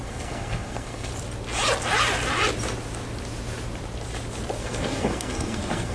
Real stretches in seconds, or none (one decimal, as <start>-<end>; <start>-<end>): 1.1-4.6